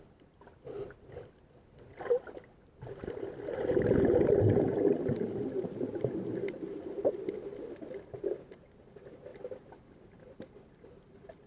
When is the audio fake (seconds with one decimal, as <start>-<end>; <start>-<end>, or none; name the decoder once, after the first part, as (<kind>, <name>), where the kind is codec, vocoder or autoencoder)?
none